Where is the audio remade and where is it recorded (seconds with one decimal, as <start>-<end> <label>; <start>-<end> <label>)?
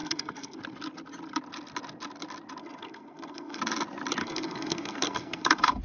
0.0-0.6 remade; 0.6-2.6 recorded; 2.6-3.6 remade; 3.6-4.2 recorded; 4.2-5.8 remade